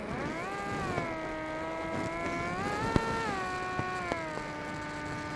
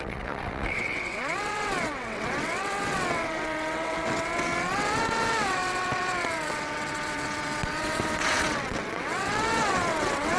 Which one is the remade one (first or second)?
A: second